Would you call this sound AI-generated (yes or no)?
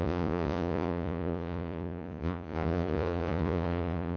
yes